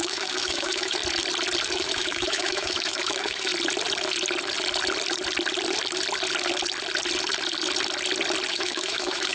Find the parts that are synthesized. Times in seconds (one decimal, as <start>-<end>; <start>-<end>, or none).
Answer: 0.0-1.0; 1.6-3.5; 8.5-9.3